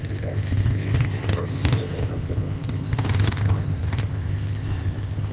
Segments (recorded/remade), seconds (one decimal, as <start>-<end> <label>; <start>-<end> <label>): 0.0-5.3 remade